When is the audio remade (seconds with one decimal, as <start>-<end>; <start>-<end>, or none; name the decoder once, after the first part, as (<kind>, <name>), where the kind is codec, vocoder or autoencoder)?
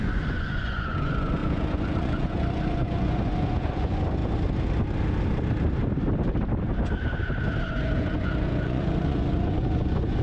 0.0-4.2 (vocoder, Vocos); 7.7-10.2